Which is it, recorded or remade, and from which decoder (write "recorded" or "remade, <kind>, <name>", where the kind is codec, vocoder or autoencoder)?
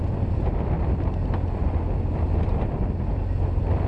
recorded